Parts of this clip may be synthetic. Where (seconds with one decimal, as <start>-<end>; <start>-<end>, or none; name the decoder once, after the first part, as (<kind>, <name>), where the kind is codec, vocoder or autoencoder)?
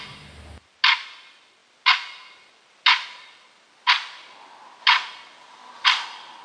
none